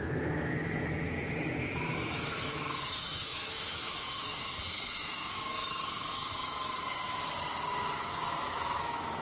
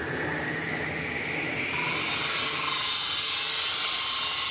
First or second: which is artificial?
first